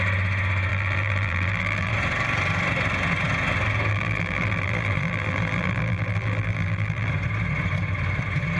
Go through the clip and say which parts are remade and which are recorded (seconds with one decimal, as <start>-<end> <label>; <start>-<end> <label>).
0.0-0.7 recorded; 0.7-1.9 remade; 1.9-3.9 recorded; 3.9-7.1 remade; 7.1-8.6 recorded